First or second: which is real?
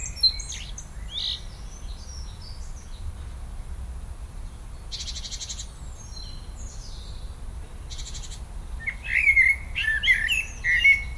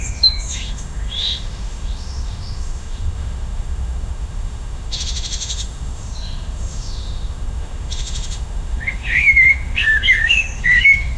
first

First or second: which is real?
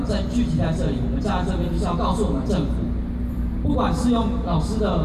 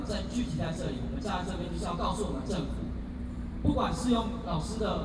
first